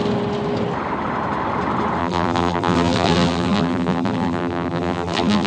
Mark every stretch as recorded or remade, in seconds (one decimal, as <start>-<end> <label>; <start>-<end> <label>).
0.0-2.0 recorded; 2.0-5.5 remade